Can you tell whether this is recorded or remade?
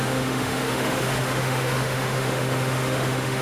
remade